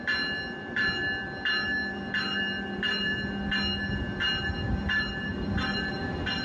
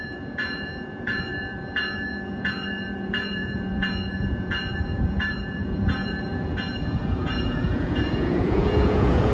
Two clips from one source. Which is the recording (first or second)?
first